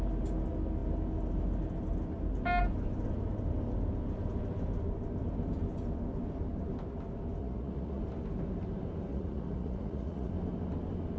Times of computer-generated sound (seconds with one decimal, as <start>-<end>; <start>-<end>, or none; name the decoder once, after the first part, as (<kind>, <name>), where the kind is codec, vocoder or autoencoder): 7.4-8.0 (vocoder, Vocos); 9.1-10.3